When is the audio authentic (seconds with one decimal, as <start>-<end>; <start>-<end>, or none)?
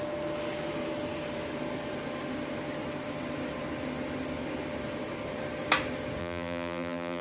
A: 0.0-6.2